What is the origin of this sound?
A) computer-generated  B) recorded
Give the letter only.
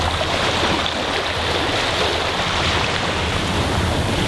B